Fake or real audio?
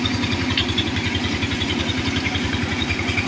fake